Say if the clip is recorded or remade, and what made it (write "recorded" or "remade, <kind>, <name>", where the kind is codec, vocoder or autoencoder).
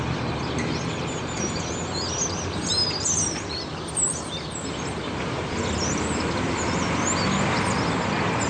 recorded